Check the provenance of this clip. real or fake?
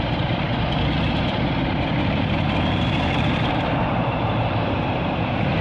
fake